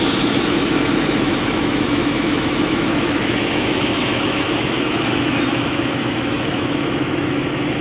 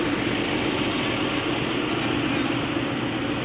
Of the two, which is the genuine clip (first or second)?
second